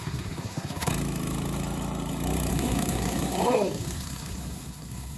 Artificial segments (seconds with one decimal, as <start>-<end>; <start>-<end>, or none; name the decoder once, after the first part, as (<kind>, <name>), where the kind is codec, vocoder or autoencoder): 0.0-0.9 (codec, SNAC); 2.5-5.2